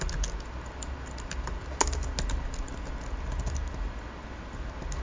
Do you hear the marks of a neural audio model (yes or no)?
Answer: no